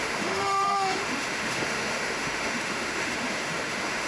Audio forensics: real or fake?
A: fake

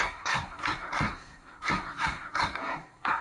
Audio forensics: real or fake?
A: fake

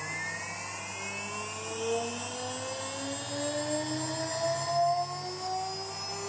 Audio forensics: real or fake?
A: real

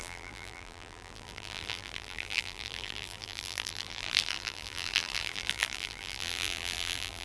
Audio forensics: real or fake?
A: fake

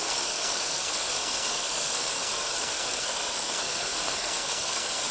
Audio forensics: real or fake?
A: fake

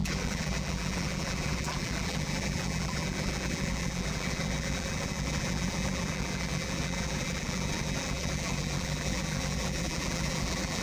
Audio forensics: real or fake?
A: fake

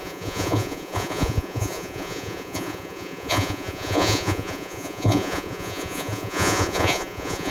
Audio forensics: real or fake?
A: fake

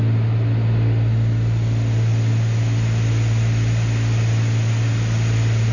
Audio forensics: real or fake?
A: real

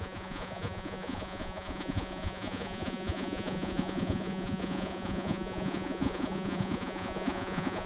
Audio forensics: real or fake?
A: fake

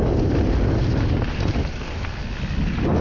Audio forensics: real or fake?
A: real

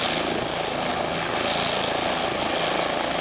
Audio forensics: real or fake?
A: real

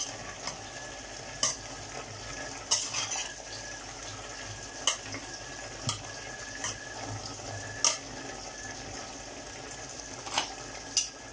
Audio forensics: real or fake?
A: real